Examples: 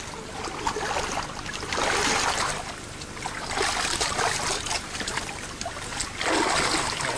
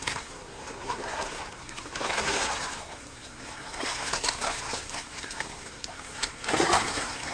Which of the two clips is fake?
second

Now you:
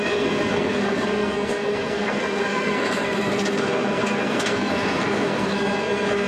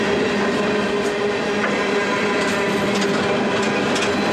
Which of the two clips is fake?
first